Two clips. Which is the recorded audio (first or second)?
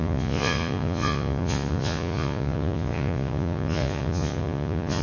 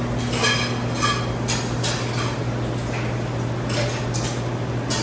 second